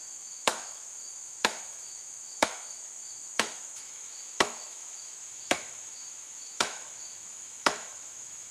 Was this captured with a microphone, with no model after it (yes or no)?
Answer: no